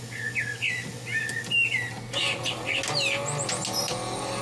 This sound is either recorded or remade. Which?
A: recorded